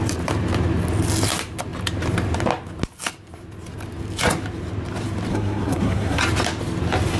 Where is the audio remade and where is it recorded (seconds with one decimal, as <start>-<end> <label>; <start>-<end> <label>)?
0.0-5.3 recorded; 5.3-6.2 remade; 6.2-7.2 recorded